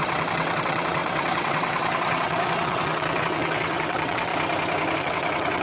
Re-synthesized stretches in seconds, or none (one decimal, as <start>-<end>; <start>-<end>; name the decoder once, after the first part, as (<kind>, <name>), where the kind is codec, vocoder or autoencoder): 0.0-4.3 (vocoder, WaveNeXt); 5.0-5.6